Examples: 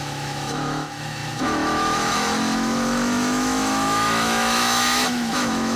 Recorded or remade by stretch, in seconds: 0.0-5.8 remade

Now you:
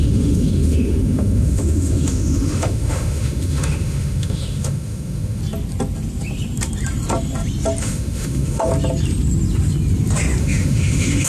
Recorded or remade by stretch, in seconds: 0.0-5.4 remade; 5.4-7.8 recorded; 7.8-8.7 remade; 8.7-10.4 recorded; 10.4-11.3 remade

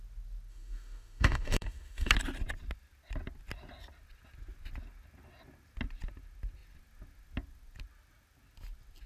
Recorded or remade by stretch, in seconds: 0.0-0.5 recorded; 0.5-2.1 remade; 2.1-9.1 recorded